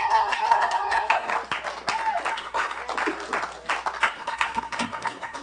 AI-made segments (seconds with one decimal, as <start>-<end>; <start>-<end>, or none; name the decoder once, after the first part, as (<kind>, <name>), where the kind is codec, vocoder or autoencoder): 0.0-1.3 (codec, SNAC); 2.3-2.8; 4.0-5.4